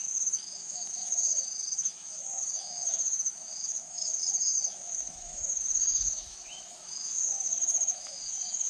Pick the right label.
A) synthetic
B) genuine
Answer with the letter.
A